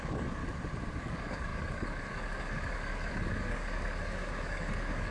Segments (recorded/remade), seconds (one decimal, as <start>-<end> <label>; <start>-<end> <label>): 0.0-0.4 remade; 0.4-0.9 recorded; 0.9-5.1 remade